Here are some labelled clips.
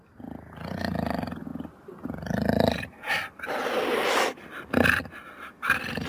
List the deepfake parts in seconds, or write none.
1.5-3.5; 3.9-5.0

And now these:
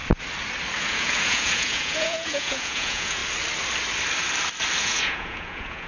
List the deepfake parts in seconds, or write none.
0.8-3.2; 4.8-5.9

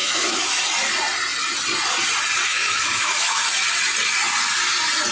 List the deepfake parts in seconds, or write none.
0.0-0.6; 2.5-3.4

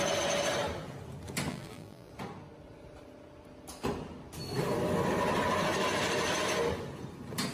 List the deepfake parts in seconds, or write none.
1.5-2.1

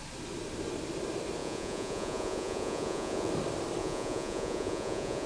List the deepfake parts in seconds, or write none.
1.4-3.3; 3.8-5.3